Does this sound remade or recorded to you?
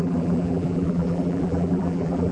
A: remade